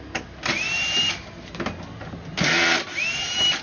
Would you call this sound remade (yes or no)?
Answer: no